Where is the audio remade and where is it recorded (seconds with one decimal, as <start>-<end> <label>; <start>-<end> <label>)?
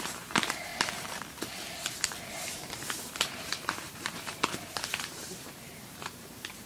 0.0-0.7 remade; 0.7-2.3 recorded; 2.3-6.7 remade